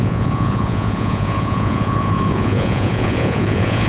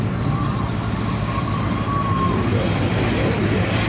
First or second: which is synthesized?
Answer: first